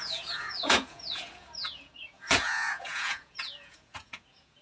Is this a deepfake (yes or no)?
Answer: yes